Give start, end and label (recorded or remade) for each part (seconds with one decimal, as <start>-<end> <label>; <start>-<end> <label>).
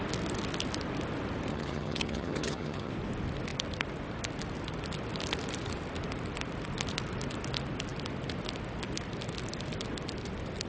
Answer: 0.0-1.5 recorded; 1.5-2.9 remade; 2.9-10.7 recorded